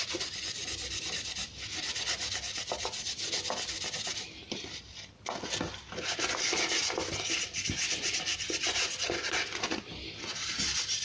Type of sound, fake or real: real